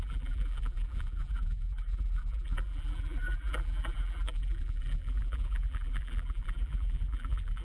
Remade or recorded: remade